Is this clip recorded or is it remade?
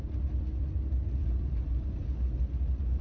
recorded